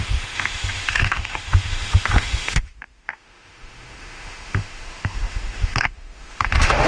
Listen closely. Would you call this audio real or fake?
fake